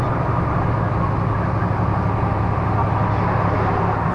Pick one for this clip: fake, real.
real